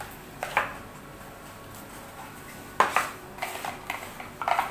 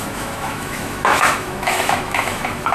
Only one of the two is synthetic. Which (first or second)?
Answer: second